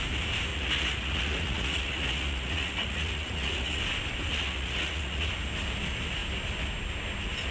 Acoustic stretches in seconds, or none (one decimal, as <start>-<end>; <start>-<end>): 0.0-0.5; 3.8-4.3; 5.3-7.5